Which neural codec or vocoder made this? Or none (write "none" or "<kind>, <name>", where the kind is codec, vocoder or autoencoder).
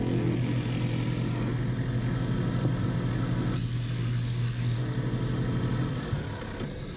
none